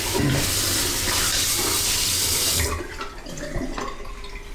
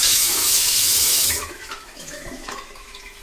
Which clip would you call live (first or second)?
first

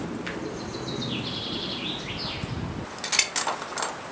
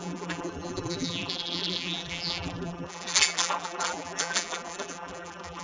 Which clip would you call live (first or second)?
first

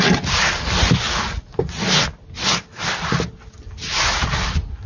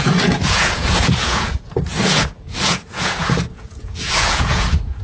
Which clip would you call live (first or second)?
first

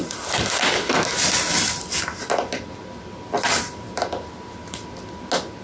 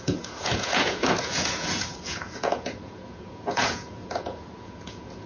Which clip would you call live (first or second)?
first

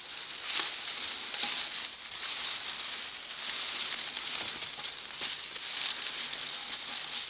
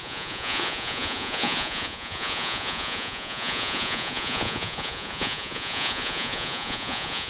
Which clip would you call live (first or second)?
first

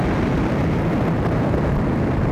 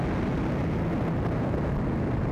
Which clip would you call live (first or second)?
second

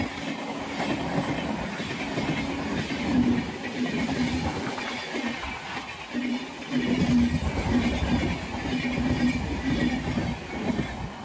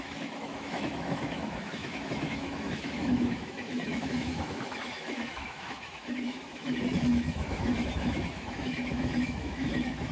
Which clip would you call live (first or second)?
first